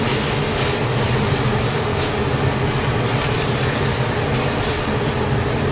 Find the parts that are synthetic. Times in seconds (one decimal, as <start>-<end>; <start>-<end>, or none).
none